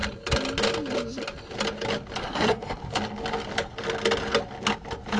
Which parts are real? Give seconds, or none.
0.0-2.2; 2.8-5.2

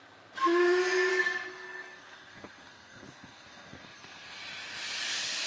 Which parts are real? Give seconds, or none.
0.0-1.1; 4.4-5.5